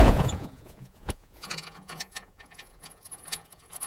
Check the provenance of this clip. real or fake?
fake